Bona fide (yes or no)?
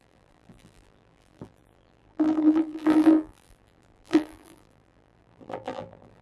no